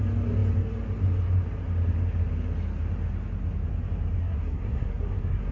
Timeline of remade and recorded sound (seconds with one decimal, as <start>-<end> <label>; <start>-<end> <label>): 0.0-4.2 recorded; 4.2-5.5 remade